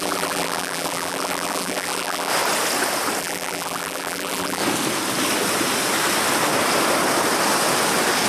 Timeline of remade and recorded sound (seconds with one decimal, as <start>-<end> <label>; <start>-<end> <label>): 0.0-2.3 remade; 2.3-3.2 recorded; 3.2-4.6 remade; 4.6-8.3 recorded